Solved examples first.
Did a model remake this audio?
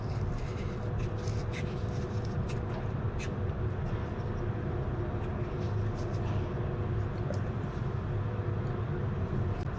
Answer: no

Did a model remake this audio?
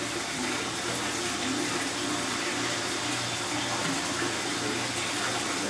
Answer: no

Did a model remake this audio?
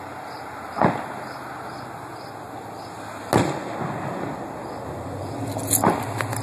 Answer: no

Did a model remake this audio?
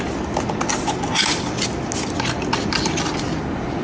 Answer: no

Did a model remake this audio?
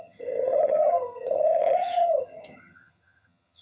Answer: yes